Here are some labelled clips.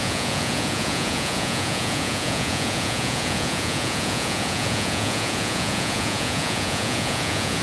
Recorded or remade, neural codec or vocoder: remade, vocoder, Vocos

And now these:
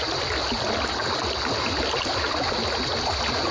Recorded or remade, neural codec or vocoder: recorded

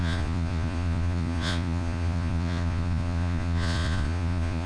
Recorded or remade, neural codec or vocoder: remade, vocoder, Vocos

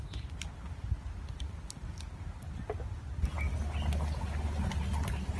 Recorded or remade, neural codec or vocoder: recorded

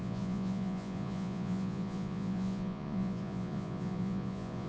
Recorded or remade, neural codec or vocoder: remade, vocoder, Vocos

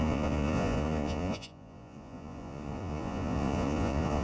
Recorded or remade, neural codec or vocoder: remade, vocoder, Vocos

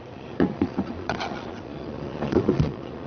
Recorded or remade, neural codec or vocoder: remade, vocoder, Vocos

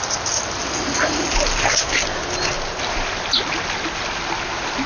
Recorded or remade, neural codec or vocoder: recorded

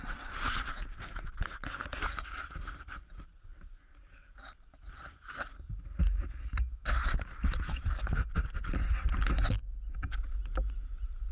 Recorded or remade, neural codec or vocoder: recorded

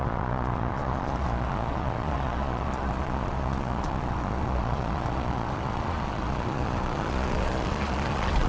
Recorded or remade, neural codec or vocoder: remade, vocoder, Vocos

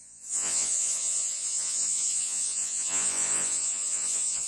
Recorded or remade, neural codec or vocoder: remade, vocoder, Vocos